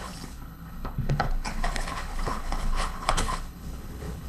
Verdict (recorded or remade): remade